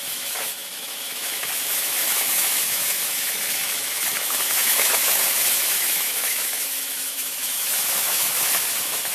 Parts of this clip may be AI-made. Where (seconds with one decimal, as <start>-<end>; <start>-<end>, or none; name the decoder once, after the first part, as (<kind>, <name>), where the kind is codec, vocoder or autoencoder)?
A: 0.0-9.1 (autoencoder, DAC-VAE)